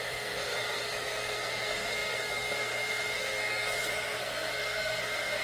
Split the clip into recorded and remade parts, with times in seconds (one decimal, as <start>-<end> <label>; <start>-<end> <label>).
0.0-5.4 remade